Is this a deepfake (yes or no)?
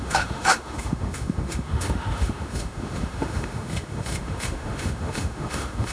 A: yes